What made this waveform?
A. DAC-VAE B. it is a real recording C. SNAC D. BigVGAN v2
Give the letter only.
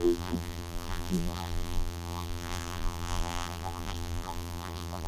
D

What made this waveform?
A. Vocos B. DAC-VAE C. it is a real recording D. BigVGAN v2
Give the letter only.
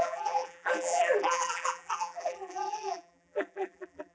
D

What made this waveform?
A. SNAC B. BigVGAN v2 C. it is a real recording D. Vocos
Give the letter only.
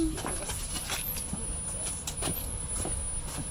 C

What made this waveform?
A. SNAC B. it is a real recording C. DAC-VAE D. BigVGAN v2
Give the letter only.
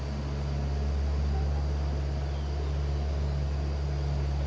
B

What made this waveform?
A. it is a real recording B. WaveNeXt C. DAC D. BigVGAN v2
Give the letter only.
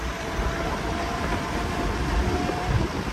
D